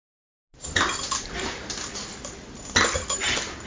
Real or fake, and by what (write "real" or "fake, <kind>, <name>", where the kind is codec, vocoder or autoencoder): real